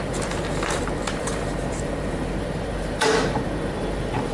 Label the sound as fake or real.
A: fake